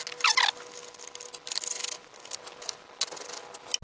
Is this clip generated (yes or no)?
no